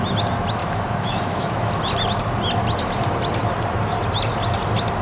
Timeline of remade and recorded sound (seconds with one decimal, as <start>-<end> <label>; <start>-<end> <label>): 0.0-0.6 recorded; 0.6-1.7 remade; 1.7-5.0 recorded